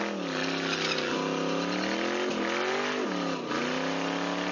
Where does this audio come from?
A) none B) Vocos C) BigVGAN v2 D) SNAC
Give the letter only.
A